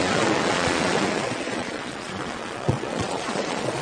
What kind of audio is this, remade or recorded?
remade